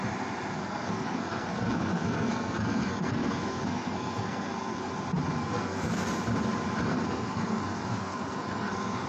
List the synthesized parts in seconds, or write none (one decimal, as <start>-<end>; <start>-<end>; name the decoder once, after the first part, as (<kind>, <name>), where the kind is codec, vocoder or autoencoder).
0.6-4.9 (codec, SNAC); 5.4-6.1; 6.9-9.1